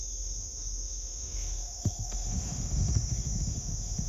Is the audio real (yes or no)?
no